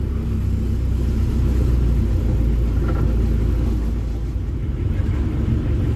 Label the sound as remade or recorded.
recorded